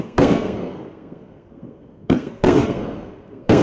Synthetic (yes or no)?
yes